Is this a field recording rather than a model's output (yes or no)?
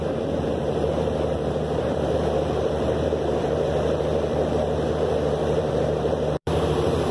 no